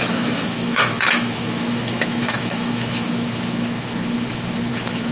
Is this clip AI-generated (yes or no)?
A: yes